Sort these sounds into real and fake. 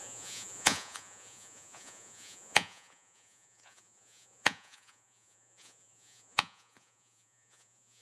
fake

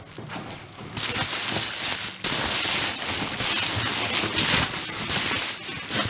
real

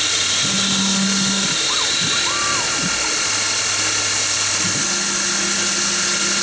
real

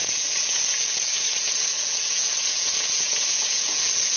fake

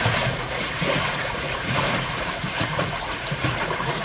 fake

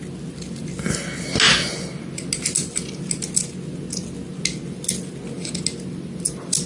real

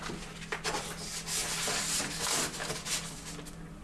real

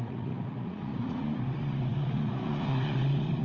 fake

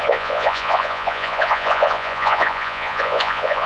fake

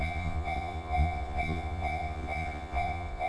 fake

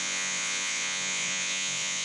fake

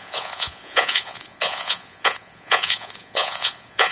fake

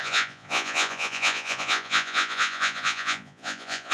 fake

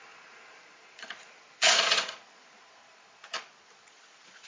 fake